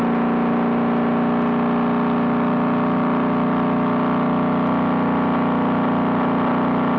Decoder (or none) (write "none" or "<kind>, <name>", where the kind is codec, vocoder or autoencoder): none